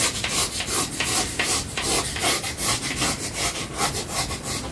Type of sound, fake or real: real